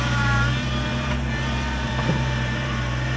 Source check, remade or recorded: remade